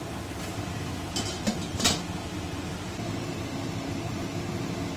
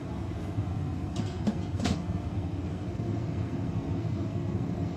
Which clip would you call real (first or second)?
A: first